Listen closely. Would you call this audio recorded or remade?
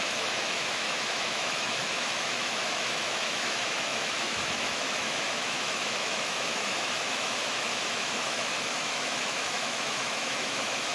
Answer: remade